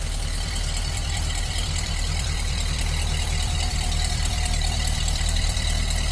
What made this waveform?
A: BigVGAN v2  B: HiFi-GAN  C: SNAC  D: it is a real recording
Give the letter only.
A